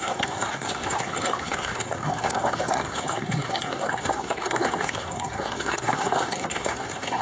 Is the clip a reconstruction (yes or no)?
yes